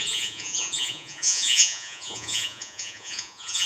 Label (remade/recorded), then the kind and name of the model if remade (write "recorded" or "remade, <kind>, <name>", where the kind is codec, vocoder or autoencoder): remade, vocoder, Vocos